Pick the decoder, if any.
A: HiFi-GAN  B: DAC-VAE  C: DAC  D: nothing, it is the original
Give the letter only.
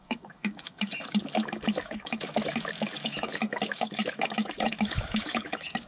B